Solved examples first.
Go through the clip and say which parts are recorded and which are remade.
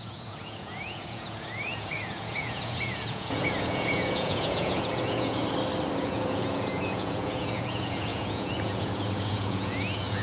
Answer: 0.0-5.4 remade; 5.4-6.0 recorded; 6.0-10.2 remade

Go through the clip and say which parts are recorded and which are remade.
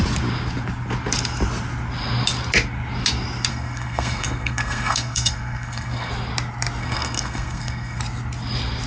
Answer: 0.0-3.5 recorded; 3.5-6.1 remade; 6.1-6.8 recorded; 6.8-8.0 remade; 8.0-8.9 recorded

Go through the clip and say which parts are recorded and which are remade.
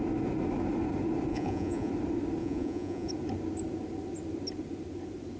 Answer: 0.0-1.3 recorded; 1.3-1.9 remade; 1.9-2.4 recorded; 2.4-3.1 remade; 3.1-5.4 recorded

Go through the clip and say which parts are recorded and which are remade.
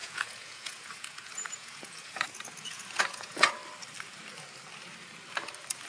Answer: 0.0-3.5 remade; 3.5-5.9 recorded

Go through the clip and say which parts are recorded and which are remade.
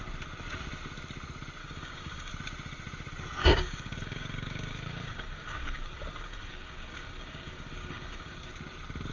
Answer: 0.0-1.6 recorded; 1.6-2.3 remade; 2.3-3.4 recorded; 3.4-8.5 remade; 8.5-9.1 recorded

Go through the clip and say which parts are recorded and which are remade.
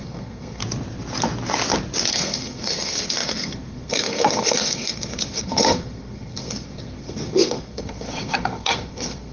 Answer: 0.0-0.6 remade; 0.6-2.1 recorded; 2.1-9.3 remade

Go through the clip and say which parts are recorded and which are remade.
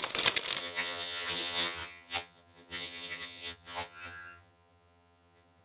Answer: 0.0-0.6 recorded; 0.6-5.6 remade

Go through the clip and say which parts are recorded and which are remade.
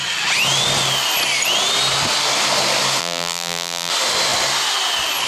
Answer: 0.0-3.0 recorded; 3.0-3.9 remade; 3.9-5.3 recorded